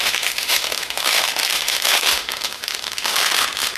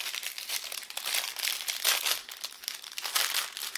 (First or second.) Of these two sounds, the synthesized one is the first